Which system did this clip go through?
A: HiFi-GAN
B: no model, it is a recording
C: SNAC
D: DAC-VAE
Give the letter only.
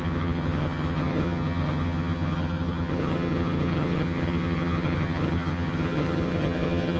A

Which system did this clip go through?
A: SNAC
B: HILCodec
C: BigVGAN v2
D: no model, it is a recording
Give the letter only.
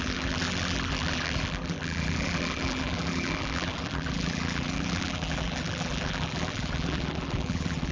C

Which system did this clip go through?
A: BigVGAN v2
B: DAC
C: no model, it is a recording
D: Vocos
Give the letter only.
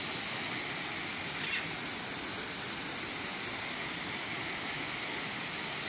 C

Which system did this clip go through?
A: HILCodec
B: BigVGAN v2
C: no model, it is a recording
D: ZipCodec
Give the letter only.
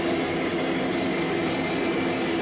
C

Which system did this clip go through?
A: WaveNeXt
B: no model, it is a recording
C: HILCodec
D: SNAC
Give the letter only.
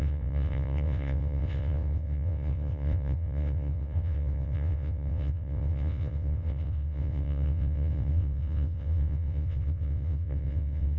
A